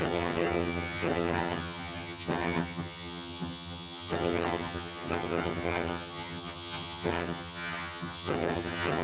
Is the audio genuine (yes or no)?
no